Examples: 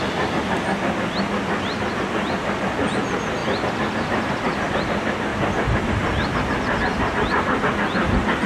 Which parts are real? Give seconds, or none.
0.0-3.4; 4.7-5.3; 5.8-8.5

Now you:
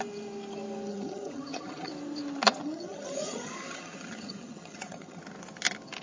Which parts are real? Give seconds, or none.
0.0-0.9; 1.9-2.6; 5.2-6.0

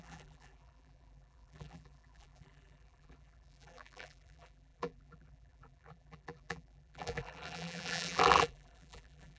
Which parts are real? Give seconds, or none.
none